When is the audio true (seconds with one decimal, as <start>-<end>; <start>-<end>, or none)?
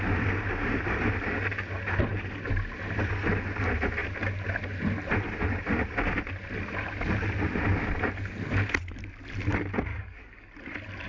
0.0-9.9; 10.5-11.1